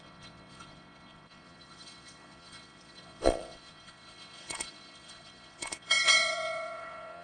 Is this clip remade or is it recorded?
remade